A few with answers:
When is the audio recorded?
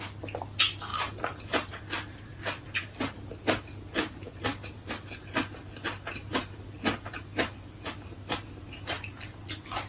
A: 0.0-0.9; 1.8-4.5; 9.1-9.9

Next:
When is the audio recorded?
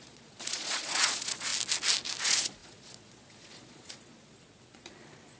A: 1.5-2.2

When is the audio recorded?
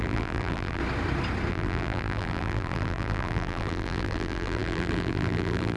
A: 0.8-1.5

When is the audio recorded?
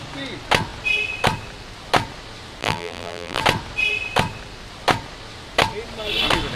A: 0.0-2.6; 3.4-6.6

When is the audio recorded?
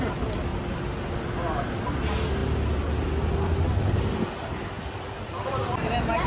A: 0.0-6.3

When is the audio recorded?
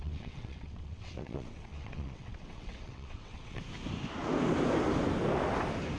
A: 3.6-6.0